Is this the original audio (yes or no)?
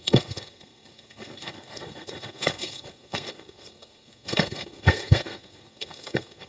no